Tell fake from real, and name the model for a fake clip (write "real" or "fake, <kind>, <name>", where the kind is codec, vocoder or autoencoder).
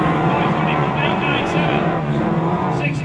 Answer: fake, vocoder, Vocos